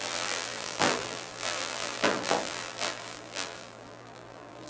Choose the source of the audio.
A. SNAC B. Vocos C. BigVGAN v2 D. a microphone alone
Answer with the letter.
C